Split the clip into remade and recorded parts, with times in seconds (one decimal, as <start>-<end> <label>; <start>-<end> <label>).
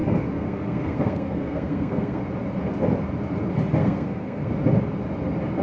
0.0-2.2 remade; 2.2-3.8 recorded; 3.8-4.5 remade; 4.5-5.6 recorded